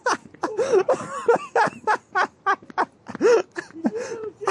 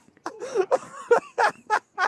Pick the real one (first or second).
first